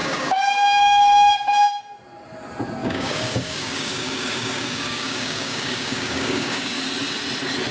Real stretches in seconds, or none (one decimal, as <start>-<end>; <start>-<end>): 1.8-2.8; 6.8-7.7